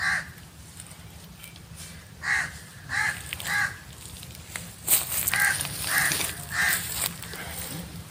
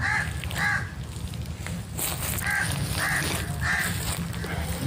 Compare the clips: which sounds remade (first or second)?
first